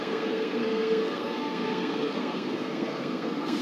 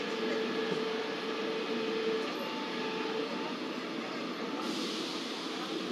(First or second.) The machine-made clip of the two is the first